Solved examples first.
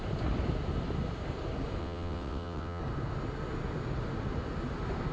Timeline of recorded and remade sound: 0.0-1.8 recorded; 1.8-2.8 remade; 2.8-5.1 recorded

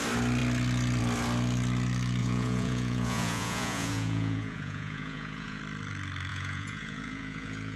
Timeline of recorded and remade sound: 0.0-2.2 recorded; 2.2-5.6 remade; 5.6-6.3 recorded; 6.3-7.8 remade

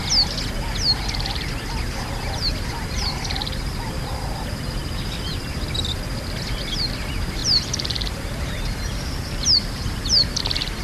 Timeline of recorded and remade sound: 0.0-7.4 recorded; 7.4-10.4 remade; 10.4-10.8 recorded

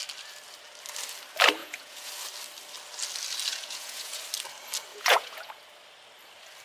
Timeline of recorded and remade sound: 0.0-1.6 recorded; 1.6-2.1 remade; 2.1-3.5 recorded; 3.5-4.2 remade; 4.2-4.9 recorded; 4.9-5.5 remade; 5.5-6.6 recorded

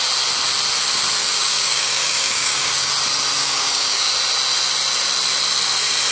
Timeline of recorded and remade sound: 0.0-1.2 recorded; 1.2-2.9 remade; 2.9-3.4 recorded; 3.4-4.1 remade; 4.1-6.1 recorded

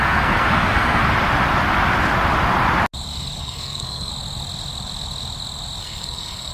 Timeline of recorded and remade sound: 0.0-1.0 remade; 1.0-3.4 recorded; 3.4-4.1 remade; 4.1-5.8 recorded; 5.8-6.5 remade